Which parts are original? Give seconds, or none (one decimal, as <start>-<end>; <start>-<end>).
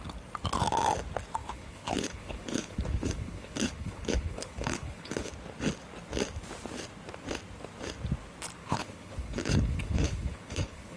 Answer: 0.0-1.4; 5.3-8.6